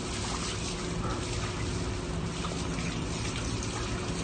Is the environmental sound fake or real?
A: real